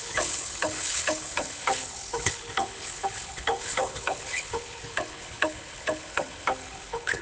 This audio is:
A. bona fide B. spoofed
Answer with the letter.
B